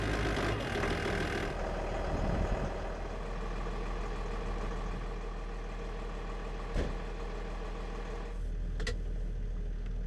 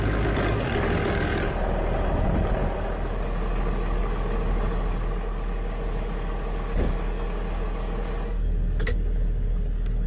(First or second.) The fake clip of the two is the second